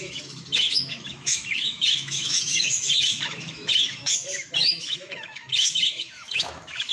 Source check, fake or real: fake